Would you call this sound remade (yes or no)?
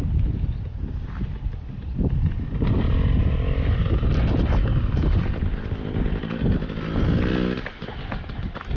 no